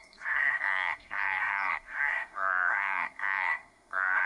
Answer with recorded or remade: remade